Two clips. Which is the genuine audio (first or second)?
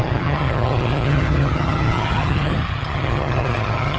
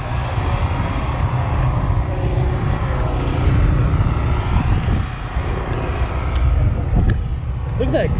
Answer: second